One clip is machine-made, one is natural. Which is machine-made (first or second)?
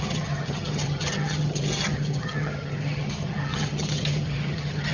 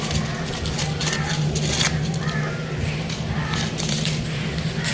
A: first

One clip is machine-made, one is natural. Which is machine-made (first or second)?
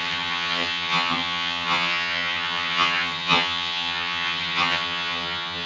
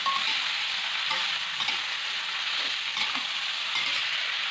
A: first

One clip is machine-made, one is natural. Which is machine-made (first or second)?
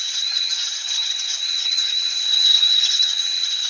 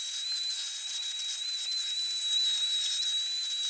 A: first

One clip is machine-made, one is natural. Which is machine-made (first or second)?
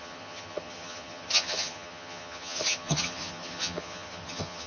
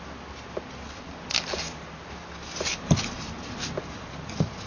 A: first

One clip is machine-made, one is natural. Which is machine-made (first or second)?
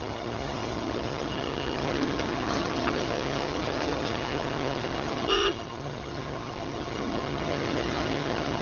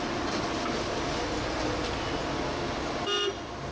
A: first